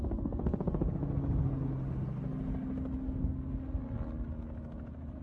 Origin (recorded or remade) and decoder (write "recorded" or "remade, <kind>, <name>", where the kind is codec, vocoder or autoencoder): recorded